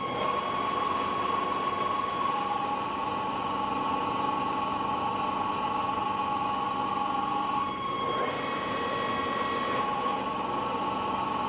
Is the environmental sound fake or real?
real